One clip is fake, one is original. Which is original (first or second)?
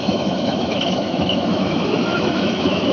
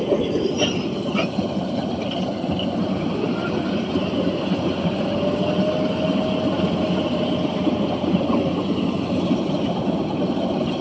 second